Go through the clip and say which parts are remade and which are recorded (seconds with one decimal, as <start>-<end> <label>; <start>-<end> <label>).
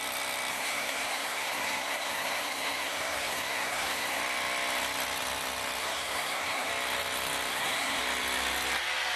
0.0-0.5 recorded; 0.5-4.2 remade; 4.2-5.8 recorded; 5.8-6.7 remade; 6.7-7.5 recorded; 7.5-8.0 remade; 8.0-9.2 recorded